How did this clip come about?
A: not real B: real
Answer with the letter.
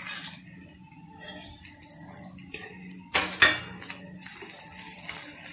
B